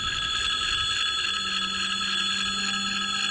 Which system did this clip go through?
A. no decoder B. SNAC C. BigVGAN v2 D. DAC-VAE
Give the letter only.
A